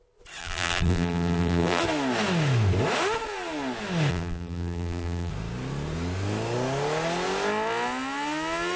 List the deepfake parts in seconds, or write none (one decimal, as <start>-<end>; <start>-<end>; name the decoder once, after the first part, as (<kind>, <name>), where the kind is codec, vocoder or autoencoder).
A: 0.4-1.8 (vocoder, BigVGAN v2); 4.1-5.3